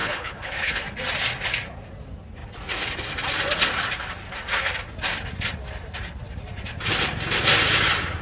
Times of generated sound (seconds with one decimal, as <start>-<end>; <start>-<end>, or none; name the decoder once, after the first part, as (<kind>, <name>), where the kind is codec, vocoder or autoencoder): 0.0-0.8 (codec, HILCodec)